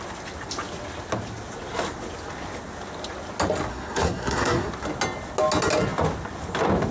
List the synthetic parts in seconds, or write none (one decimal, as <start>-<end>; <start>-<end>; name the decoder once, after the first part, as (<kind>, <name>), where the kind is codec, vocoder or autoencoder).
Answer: 3.7-4.7 (codec, SNAC)